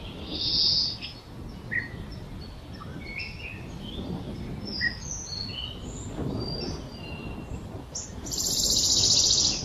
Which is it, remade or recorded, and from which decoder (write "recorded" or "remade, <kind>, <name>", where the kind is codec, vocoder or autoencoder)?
recorded